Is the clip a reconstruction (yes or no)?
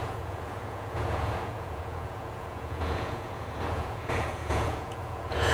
yes